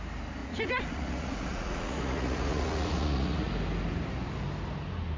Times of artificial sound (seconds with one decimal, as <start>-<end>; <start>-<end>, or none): 0.4-3.5